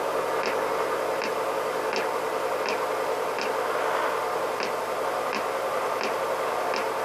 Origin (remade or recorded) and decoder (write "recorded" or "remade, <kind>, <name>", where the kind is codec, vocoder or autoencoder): recorded